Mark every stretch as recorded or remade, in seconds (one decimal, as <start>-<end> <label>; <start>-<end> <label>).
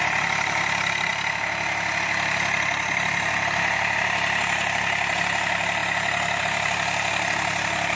0.0-8.0 recorded